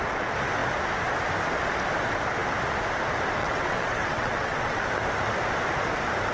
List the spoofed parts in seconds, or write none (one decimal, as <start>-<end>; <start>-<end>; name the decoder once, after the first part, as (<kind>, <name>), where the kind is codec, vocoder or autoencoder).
3.4-4.8 (vocoder, WaveNeXt)